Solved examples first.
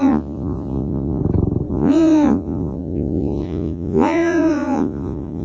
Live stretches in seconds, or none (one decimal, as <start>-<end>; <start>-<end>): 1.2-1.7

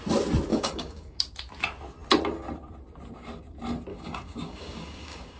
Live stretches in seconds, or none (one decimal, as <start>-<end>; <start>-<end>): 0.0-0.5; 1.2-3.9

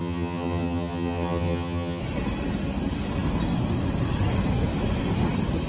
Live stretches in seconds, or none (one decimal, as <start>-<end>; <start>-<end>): 2.0-5.7

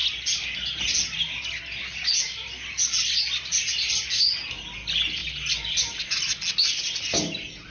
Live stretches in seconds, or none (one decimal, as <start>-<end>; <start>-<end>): 0.0-7.7

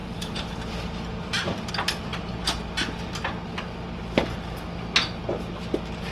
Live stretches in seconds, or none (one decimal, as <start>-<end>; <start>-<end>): 1.7-6.1